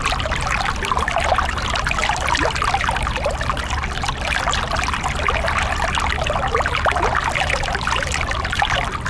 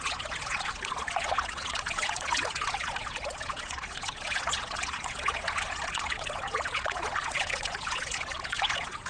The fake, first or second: second